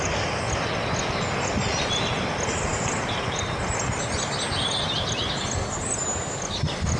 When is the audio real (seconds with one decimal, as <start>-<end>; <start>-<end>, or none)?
0.0-2.7; 3.6-7.0